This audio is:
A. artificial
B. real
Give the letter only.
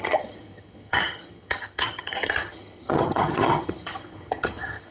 A